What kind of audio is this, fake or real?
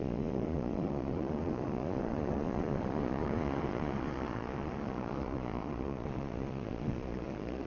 fake